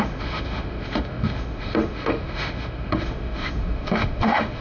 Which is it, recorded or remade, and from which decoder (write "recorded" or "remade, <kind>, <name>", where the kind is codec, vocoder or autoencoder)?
remade, autoencoder, DAC-VAE